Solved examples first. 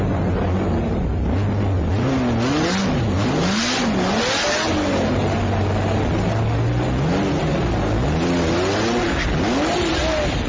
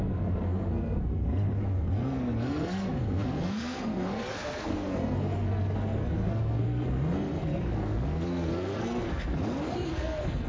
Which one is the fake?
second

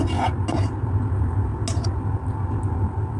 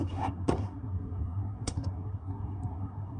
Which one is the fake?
second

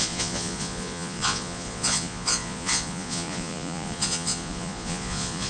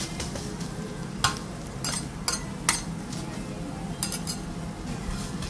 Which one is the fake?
first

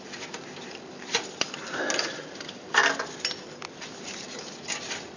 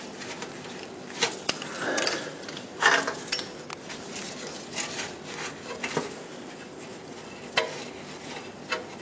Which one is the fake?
first